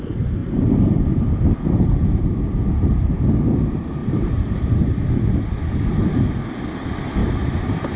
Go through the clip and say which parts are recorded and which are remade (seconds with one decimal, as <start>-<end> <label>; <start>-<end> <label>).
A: 0.0-4.0 recorded; 4.0-5.0 remade; 5.0-7.2 recorded; 7.2-8.0 remade